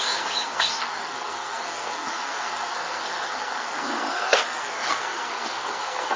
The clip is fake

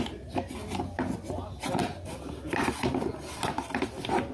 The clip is real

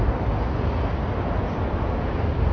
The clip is real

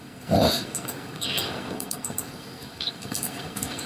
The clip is fake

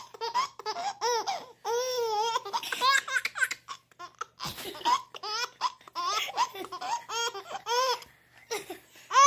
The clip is real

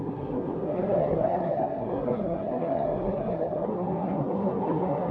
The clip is fake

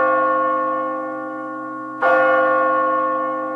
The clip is real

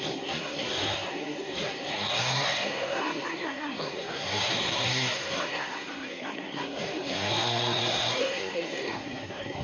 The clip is fake